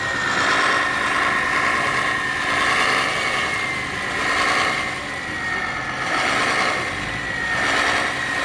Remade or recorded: recorded